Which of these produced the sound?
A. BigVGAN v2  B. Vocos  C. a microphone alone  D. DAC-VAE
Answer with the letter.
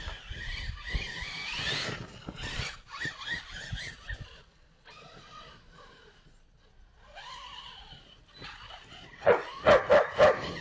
C